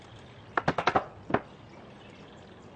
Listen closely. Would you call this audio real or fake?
real